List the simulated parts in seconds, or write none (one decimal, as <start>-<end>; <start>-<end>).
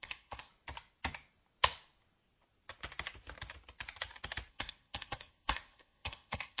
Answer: 0.0-0.5; 4.5-6.6